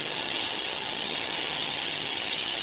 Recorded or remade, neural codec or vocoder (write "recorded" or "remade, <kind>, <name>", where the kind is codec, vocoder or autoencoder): remade, vocoder, HiFi-GAN